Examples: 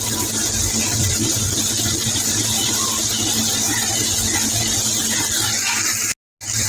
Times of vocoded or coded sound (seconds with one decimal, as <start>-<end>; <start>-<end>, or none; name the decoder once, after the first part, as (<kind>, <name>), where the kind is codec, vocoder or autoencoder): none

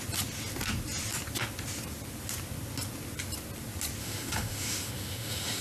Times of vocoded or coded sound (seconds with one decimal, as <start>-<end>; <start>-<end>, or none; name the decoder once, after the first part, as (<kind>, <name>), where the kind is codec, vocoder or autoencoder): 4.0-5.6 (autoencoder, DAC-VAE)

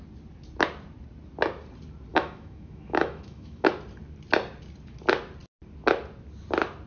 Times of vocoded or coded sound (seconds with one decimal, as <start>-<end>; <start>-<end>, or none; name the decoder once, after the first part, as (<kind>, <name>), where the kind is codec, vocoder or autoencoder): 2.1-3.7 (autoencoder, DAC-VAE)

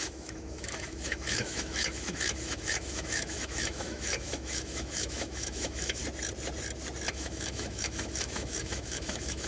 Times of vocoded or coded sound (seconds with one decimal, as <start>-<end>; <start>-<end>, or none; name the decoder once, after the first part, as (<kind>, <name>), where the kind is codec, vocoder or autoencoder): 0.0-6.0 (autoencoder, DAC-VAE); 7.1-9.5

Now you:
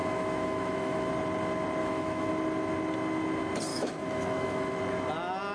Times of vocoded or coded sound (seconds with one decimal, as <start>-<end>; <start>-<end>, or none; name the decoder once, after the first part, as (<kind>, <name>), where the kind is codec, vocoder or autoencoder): 0.0-1.1 (autoencoder, DAC-VAE); 1.8-2.3; 3.7-4.8

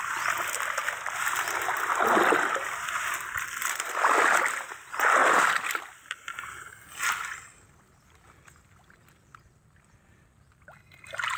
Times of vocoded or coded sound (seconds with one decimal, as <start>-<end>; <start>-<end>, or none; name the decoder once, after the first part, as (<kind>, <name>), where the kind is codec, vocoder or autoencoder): none

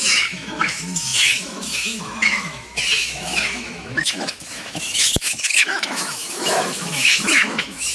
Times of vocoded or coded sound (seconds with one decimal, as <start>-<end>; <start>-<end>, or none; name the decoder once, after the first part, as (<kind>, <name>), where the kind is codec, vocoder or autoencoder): 0.0-7.9 (autoencoder, DAC-VAE)

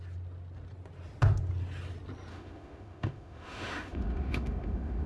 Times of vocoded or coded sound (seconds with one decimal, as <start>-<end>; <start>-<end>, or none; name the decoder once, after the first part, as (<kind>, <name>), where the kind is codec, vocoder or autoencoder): 2.3-5.1 (autoencoder, DAC-VAE)